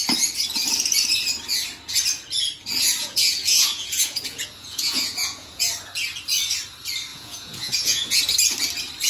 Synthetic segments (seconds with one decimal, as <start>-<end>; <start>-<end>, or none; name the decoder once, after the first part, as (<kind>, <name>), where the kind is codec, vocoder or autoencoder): 3.0-5.7 (vocoder, Vocos); 7.1-8.2